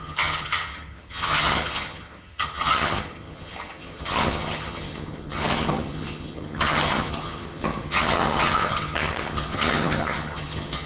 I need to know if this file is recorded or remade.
remade